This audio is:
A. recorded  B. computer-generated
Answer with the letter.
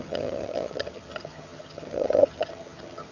B